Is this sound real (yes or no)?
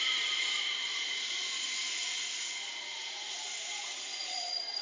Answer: no